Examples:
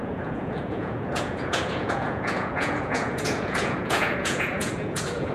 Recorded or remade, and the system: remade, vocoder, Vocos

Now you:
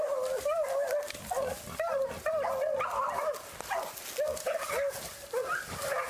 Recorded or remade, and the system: recorded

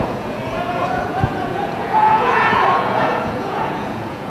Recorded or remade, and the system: remade, vocoder, Vocos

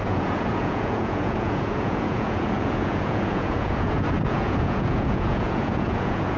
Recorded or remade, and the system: remade, vocoder, Vocos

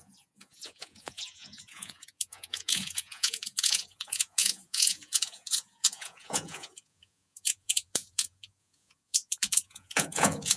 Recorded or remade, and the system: remade, vocoder, Vocos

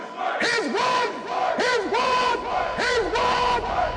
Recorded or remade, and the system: remade, vocoder, Vocos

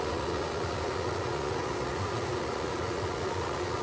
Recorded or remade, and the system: remade, vocoder, Vocos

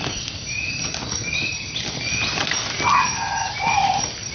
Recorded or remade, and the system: recorded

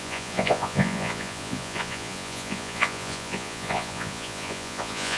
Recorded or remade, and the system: remade, vocoder, Vocos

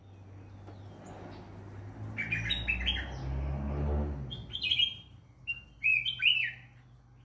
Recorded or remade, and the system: recorded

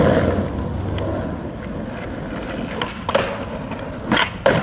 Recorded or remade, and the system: recorded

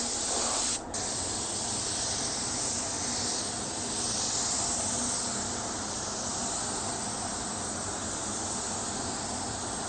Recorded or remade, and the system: recorded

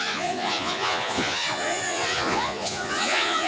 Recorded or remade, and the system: remade, vocoder, Vocos